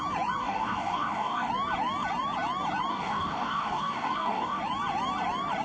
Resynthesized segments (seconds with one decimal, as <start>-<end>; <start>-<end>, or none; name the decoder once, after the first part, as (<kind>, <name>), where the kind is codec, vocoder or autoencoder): 0.4-1.5 (codec, DAC); 2.9-4.6